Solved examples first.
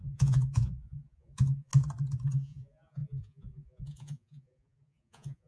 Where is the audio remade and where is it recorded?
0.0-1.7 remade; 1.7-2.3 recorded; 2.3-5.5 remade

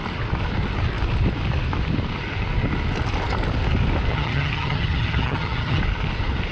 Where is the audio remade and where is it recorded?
0.0-4.1 recorded; 4.1-5.8 remade; 5.8-6.5 recorded

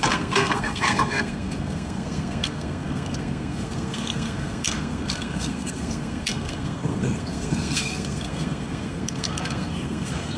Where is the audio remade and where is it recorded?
0.0-10.4 remade

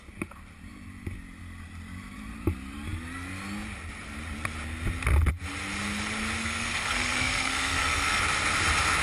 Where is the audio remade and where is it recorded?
0.0-6.4 recorded; 6.4-8.2 remade; 8.2-9.0 recorded

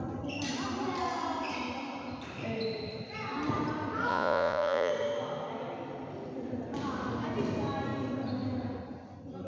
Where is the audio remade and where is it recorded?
0.0-4.1 recorded; 4.1-4.9 remade; 4.9-9.5 recorded

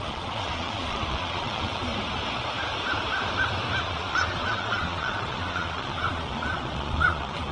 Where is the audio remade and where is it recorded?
0.0-1.9 remade; 1.9-3.8 recorded; 3.8-7.5 remade